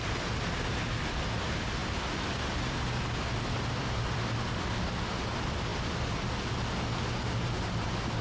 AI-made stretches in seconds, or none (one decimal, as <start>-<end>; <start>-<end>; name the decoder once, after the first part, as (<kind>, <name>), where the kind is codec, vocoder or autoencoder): none